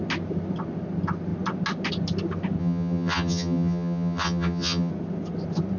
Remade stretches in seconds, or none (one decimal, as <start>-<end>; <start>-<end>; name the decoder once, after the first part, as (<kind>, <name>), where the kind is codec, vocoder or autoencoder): 2.6-4.9 (vocoder, HiFi-GAN)